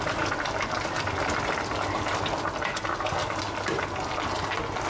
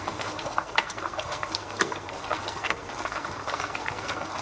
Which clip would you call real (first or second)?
first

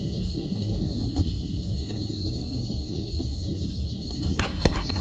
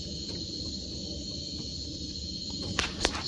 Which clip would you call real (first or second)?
second